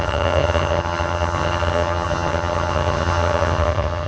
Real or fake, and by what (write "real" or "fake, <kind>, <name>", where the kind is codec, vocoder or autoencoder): fake, vocoder, HiFi-GAN